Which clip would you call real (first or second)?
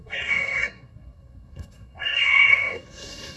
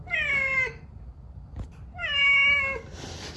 second